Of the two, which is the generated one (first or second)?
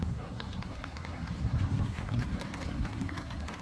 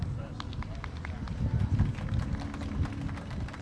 first